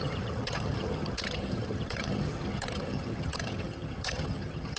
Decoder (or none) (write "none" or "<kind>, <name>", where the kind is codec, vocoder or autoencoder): vocoder, HiFi-GAN